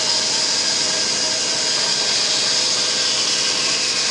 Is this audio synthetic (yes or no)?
no